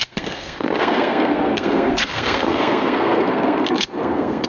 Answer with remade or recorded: remade